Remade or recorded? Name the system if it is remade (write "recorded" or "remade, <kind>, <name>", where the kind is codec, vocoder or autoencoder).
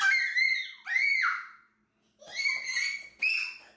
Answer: recorded